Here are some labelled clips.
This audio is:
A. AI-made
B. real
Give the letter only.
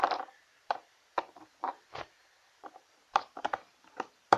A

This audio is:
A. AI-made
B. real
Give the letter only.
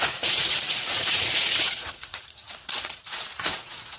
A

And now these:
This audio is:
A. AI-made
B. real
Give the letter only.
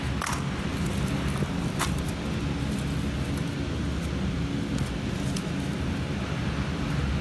B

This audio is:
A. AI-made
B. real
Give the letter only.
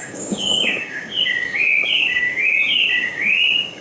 A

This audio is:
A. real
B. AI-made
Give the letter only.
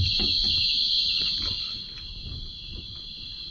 A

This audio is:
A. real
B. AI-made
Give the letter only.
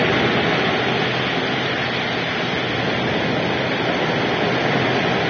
A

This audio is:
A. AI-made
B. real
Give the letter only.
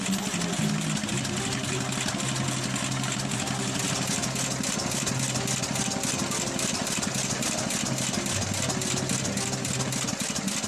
B